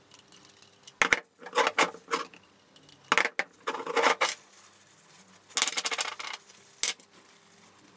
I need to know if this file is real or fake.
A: real